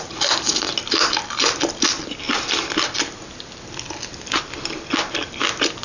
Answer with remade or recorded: recorded